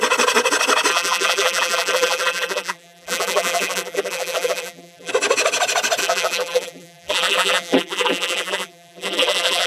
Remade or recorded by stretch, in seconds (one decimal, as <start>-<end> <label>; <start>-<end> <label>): 0.0-0.9 recorded; 0.9-5.1 remade; 5.1-6.0 recorded; 6.0-9.7 remade